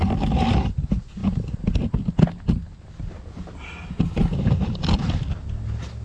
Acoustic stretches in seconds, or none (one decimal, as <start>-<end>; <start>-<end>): 0.0-6.0